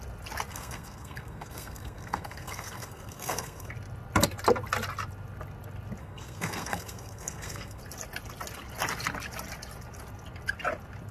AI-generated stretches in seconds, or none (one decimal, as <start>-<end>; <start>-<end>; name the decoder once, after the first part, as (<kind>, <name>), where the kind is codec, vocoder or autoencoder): 0.5-3.7 (codec, SNAC); 6.0-7.8